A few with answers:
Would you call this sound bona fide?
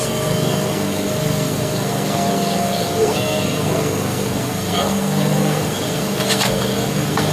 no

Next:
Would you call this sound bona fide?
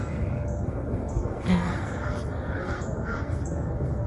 no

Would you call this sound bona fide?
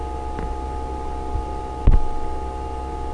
yes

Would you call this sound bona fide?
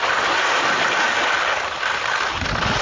yes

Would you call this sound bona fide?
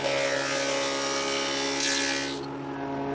yes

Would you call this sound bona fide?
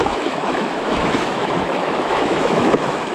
no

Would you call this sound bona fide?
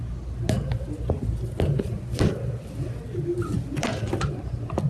yes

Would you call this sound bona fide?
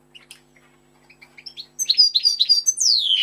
yes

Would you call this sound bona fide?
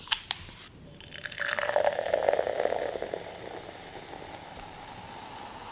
yes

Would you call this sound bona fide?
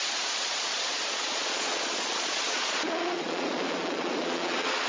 no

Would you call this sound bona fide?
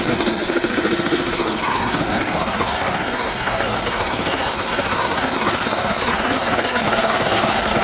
no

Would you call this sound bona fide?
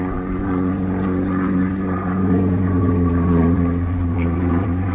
no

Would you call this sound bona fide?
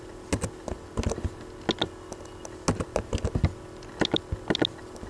yes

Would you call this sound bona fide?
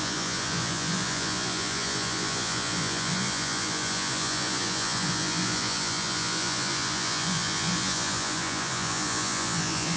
no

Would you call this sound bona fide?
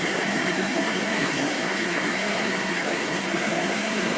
no